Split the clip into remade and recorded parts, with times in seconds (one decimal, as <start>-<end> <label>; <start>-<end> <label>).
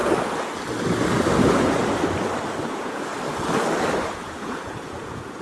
0.0-2.7 recorded; 2.7-3.1 remade; 3.1-4.1 recorded; 4.1-5.4 remade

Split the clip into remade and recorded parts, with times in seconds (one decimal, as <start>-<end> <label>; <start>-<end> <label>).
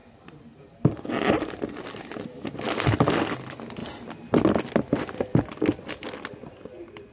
0.0-1.6 remade; 1.6-5.7 recorded; 5.7-7.1 remade